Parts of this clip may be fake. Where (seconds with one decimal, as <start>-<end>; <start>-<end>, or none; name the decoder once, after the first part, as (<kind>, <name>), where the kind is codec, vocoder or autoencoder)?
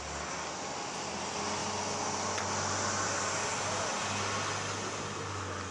none